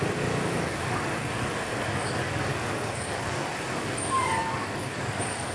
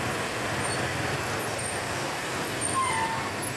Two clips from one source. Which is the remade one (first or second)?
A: first